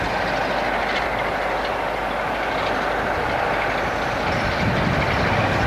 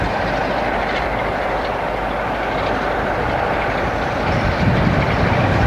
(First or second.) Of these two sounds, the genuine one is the first